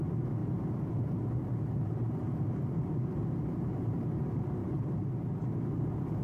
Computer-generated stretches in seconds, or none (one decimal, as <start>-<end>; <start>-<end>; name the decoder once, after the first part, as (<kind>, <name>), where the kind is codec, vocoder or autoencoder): 0.4-1.0 (vocoder, BigVGAN v2); 1.4-3.2; 4.6-6.2